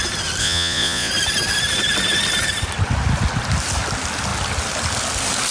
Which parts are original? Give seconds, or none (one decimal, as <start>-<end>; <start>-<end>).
0.0-0.4; 1.1-5.5